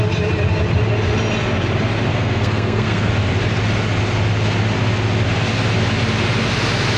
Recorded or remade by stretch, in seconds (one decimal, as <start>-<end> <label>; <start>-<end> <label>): 0.0-2.1 recorded; 2.1-3.1 remade; 3.1-7.0 recorded

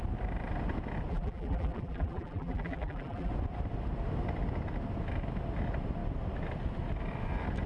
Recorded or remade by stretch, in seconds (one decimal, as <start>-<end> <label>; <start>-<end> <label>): 0.0-1.1 recorded; 1.1-3.3 remade; 3.3-7.7 recorded